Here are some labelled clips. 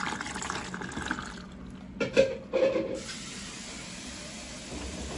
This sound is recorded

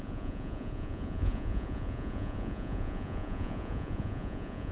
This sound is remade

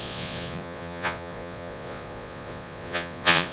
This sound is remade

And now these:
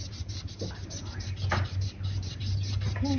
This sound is recorded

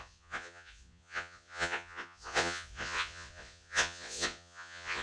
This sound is remade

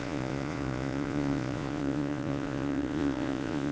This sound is remade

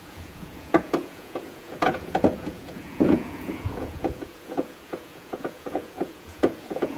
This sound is remade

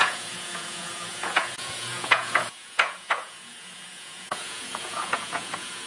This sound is remade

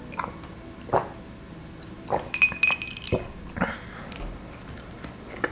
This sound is recorded